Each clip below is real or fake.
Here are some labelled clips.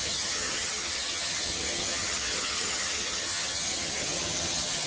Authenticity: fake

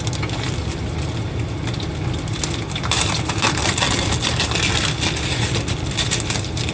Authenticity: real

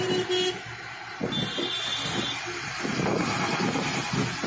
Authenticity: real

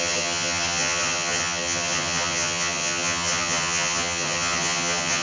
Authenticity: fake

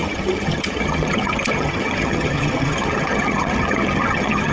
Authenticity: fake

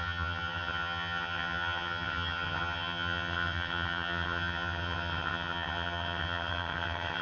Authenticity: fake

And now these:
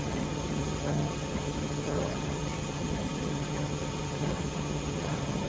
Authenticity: fake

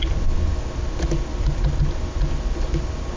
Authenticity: real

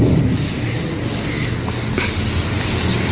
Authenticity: real